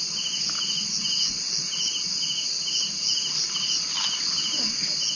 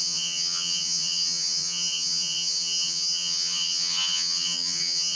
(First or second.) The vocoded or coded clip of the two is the second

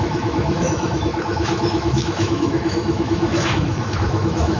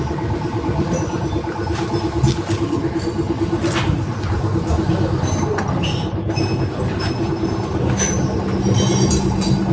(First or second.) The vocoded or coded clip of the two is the first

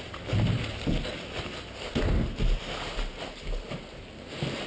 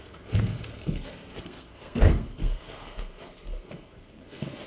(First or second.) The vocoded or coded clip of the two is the second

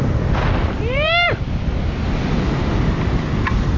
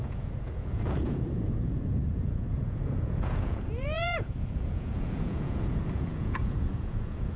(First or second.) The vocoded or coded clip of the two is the second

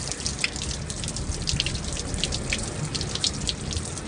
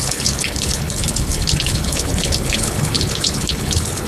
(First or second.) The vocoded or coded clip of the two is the second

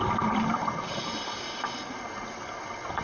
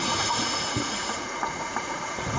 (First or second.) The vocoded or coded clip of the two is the second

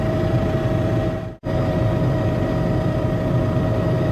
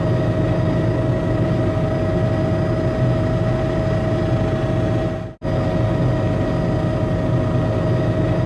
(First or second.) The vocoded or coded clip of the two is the first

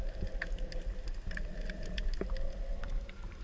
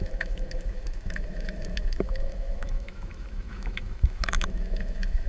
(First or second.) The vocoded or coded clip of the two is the second